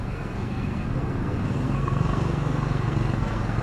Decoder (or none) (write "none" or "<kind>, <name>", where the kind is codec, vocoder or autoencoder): codec, SNAC